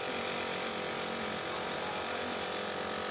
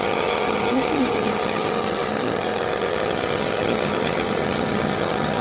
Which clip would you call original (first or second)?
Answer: first